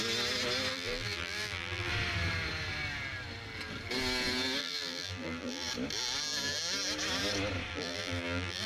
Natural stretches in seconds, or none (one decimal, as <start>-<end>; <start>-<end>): 0.0-0.7; 1.9-4.6; 5.7-7.7